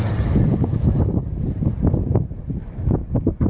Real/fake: real